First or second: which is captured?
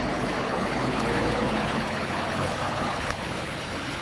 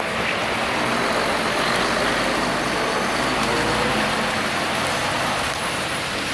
second